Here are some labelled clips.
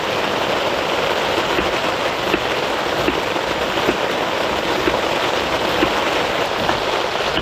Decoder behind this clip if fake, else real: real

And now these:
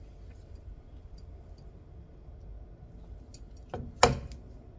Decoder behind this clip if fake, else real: real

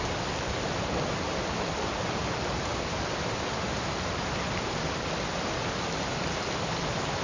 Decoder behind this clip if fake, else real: real